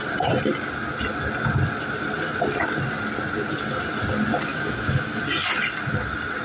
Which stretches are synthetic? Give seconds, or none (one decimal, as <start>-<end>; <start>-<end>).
4.5-5.2